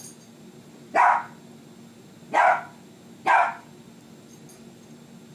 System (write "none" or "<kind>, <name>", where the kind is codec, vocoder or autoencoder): none